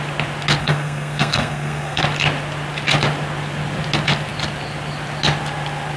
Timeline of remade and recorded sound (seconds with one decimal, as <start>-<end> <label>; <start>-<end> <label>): 0.0-0.6 recorded; 0.6-2.0 remade; 2.0-6.0 recorded